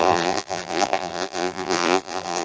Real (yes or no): no